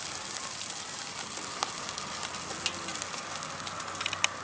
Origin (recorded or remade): recorded